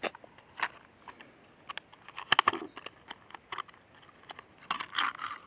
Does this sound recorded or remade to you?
recorded